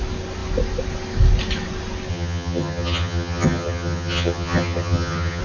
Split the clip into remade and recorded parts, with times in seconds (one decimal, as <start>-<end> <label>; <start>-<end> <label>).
0.0-2.1 recorded; 2.1-5.4 remade